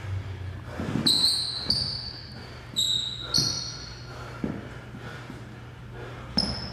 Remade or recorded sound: recorded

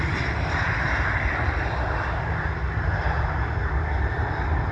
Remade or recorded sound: recorded